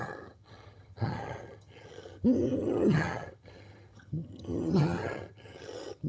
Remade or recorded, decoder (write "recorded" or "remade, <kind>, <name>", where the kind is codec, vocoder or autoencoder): remade, vocoder, HiFi-GAN